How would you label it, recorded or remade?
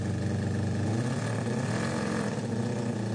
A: recorded